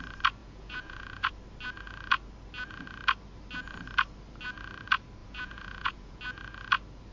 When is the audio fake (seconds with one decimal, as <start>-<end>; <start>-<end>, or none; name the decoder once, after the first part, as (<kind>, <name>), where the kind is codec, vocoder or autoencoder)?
0.4-1.3 (vocoder, Vocos); 5.2-6.2